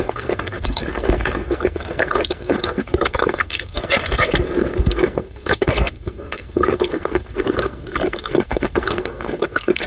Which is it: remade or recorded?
remade